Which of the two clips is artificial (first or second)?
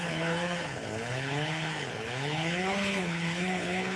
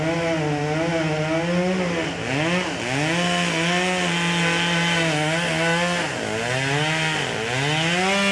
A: first